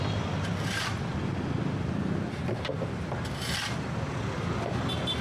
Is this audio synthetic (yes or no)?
yes